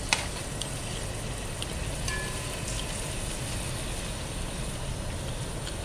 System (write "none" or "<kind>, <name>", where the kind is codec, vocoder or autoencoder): none